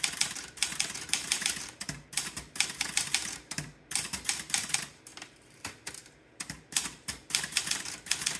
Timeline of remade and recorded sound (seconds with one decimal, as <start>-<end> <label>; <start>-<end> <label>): 0.0-8.4 remade